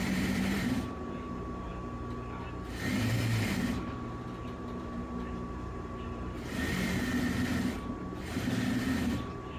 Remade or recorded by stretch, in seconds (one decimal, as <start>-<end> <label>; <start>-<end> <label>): 0.0-1.7 remade; 1.7-3.1 recorded; 3.1-6.6 remade; 6.6-8.2 recorded; 8.2-9.6 remade